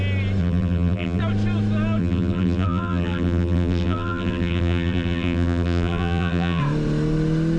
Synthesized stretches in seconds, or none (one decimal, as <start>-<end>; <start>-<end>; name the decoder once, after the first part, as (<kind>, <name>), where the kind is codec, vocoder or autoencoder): 0.4-1.2 (vocoder, BigVGAN v2); 2.0-6.6

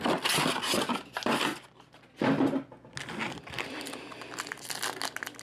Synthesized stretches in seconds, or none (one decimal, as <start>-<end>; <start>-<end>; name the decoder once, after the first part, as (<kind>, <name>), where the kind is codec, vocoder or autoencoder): 1.5-2.2 (vocoder, BigVGAN v2)